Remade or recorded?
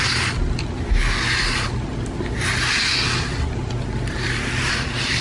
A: recorded